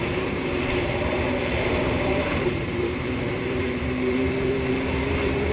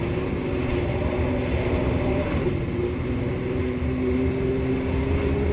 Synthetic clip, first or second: first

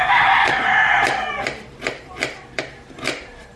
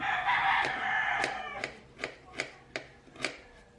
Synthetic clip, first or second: first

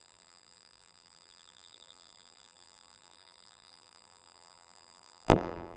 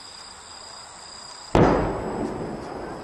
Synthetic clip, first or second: first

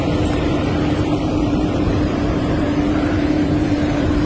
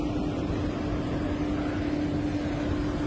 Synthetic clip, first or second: first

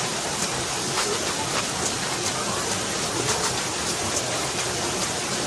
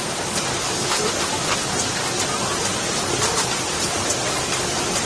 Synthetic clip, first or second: first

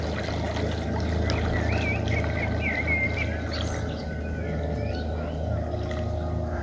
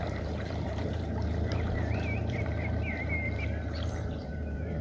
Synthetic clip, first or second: second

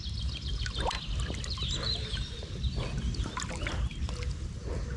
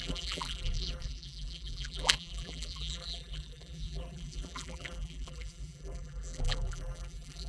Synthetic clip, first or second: second